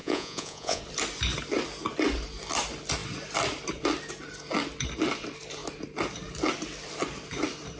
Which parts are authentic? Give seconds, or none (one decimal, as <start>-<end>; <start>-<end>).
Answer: 0.8-7.8